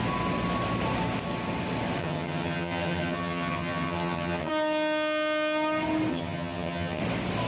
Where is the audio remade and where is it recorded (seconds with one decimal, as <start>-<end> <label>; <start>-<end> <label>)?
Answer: 0.0-2.0 recorded; 2.0-4.5 remade; 4.5-6.1 recorded; 6.1-7.0 remade; 7.0-7.5 recorded